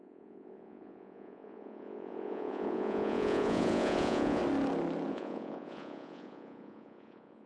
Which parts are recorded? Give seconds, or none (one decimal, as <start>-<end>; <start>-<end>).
4.4-5.1